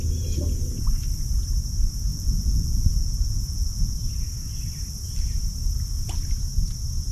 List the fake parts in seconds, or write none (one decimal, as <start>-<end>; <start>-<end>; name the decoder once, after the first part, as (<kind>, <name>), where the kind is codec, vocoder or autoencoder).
2.1-3.9 (vocoder, Vocos)